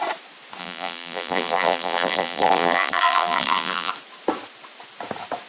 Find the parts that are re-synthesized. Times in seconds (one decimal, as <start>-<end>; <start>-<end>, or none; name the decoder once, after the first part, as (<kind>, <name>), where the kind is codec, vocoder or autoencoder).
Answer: 0.6-3.9 (vocoder, BigVGAN v2)